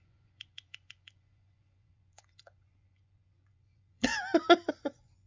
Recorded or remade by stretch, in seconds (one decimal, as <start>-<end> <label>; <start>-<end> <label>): 0.0-4.1 remade; 4.1-4.7 recorded; 4.7-5.3 remade